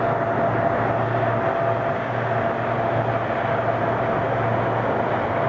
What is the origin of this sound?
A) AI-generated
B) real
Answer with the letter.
B